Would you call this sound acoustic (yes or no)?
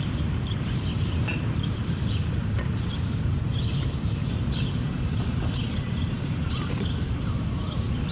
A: no